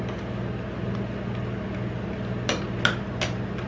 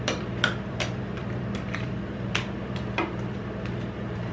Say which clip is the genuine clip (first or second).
first